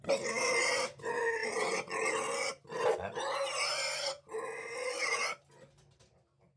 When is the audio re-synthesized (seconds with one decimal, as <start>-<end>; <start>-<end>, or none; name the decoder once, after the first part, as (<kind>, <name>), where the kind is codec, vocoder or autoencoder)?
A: 1.4-2.1 (vocoder, BigVGAN v2)